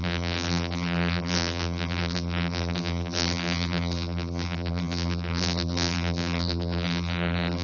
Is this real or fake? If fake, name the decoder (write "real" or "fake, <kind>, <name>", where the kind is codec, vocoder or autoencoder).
fake, vocoder, BigVGAN v2